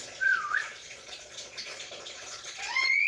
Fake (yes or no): yes